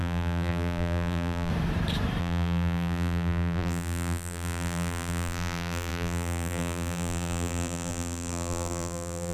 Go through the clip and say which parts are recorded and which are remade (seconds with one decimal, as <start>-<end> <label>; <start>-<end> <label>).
0.0-1.5 remade; 1.5-2.2 recorded; 2.2-9.3 remade